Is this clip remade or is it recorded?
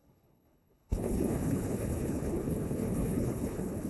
remade